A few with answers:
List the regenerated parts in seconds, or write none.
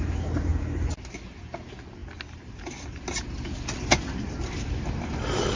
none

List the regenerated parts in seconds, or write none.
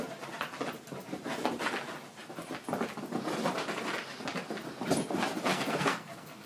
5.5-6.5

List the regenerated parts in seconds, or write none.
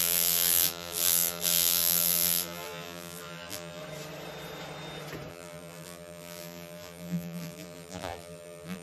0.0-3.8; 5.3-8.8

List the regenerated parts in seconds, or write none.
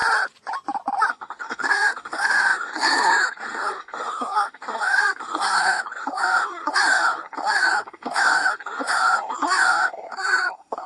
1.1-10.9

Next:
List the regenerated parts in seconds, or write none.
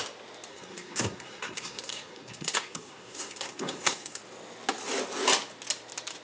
0.5-4.2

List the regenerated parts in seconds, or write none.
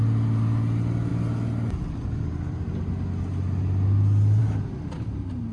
none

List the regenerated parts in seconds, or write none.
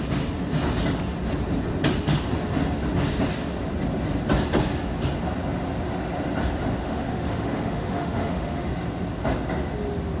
6.8-8.7